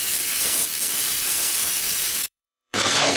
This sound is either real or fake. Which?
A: fake